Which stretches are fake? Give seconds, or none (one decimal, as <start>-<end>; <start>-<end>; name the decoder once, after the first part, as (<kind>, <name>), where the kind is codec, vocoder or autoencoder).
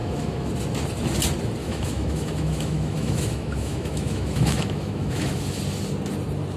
0.0-0.5 (autoencoder, DAC-VAE); 1.6-5.6